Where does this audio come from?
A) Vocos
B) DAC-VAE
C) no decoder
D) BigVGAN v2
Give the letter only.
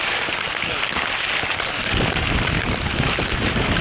C